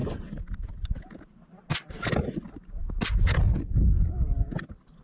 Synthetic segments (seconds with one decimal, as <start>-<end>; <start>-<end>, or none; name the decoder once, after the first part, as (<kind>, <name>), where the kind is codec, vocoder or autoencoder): none